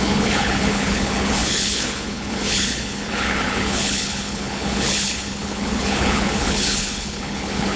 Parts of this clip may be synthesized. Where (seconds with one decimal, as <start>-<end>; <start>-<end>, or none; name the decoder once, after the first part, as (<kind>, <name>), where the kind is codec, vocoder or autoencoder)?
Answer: 0.0-7.8 (codec, HILCodec)